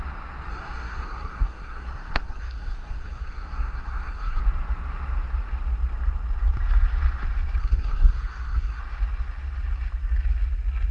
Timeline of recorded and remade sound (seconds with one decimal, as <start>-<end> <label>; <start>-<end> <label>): 0.0-0.5 recorded; 0.5-4.4 remade; 4.4-7.6 recorded; 7.6-8.8 remade; 8.8-10.9 recorded